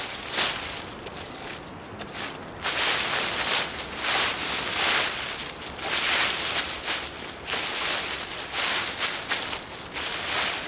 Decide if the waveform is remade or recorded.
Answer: recorded